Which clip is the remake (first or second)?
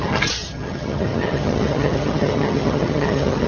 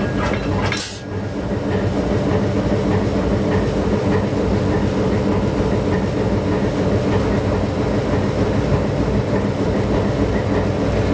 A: first